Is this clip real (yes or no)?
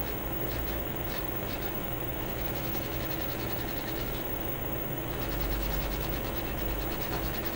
no